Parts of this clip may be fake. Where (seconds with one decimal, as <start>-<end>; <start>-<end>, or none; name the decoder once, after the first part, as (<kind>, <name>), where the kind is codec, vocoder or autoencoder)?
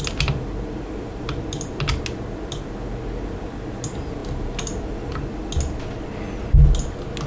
none